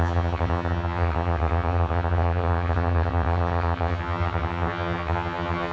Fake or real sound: fake